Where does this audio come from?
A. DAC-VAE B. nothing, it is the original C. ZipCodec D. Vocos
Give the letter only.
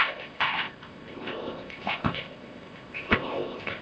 C